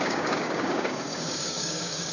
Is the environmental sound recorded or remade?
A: remade